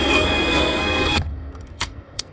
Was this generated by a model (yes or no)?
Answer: yes